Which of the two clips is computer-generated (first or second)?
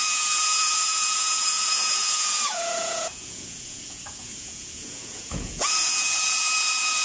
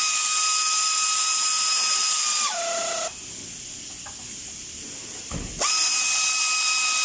first